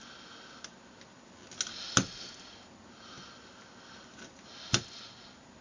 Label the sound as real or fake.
real